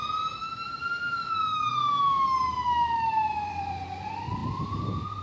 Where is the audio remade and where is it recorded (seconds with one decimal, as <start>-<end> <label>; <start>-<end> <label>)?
0.0-0.4 recorded; 0.4-3.5 remade; 3.5-5.2 recorded